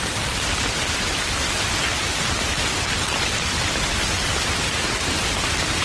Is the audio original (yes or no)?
yes